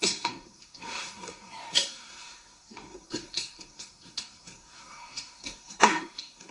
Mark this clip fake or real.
fake